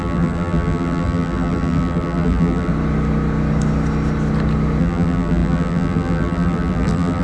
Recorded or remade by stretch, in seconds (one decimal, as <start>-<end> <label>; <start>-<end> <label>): 0.0-2.7 remade; 2.7-4.8 recorded; 4.8-7.2 remade